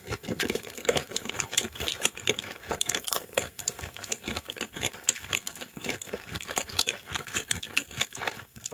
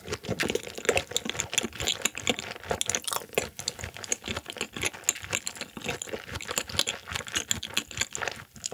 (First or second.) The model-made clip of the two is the first